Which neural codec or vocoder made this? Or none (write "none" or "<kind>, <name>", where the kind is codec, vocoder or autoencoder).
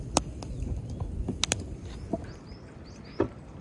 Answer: none